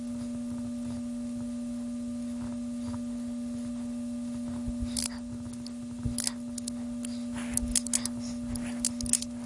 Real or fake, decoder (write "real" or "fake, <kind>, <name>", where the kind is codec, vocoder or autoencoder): real